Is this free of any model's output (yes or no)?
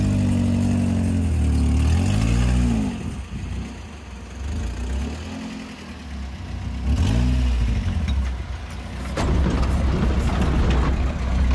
yes